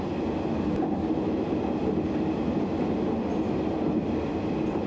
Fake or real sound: real